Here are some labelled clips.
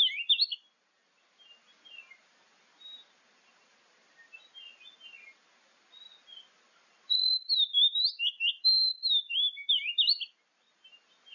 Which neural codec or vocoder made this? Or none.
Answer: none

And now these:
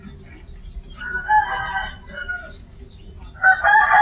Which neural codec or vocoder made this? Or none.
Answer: none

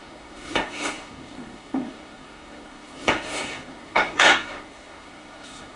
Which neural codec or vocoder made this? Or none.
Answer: codec, SNAC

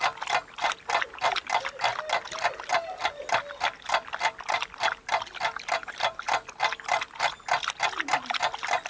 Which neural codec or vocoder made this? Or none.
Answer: none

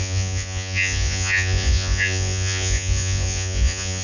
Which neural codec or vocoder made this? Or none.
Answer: vocoder, Vocos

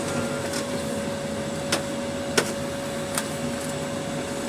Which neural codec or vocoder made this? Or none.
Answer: none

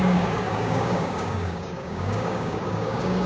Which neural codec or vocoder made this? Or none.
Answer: codec, DAC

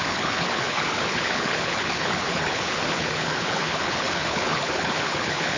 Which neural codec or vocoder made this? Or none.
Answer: codec, HILCodec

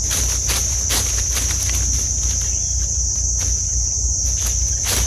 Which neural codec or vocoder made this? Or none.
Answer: none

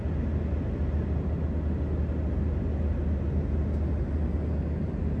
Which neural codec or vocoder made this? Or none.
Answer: none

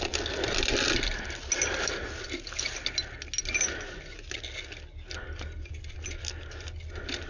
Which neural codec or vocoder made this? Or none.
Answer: none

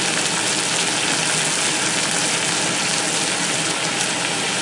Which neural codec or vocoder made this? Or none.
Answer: none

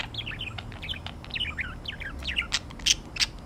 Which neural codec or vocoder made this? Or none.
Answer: none